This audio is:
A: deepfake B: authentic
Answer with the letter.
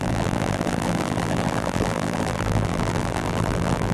A